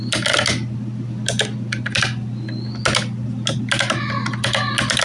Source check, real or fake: real